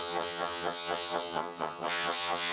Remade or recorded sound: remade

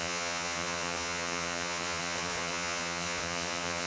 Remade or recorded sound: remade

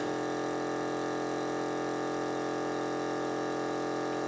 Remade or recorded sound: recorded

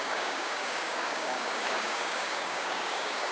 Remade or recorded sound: remade